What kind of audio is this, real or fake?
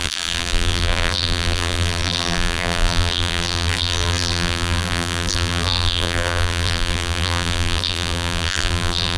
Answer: fake